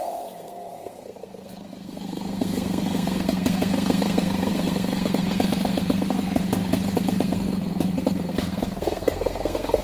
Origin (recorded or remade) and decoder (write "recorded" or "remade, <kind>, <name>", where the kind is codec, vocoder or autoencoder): remade, codec, SNAC